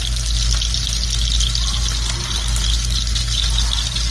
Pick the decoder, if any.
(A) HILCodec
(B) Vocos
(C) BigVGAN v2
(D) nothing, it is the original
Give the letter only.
D